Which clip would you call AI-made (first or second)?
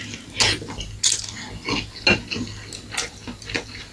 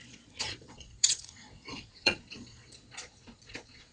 second